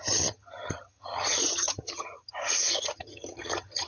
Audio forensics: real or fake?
fake